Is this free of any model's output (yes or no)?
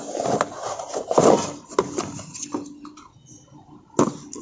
yes